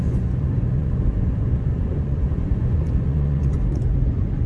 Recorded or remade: remade